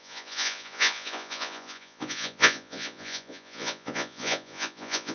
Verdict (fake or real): fake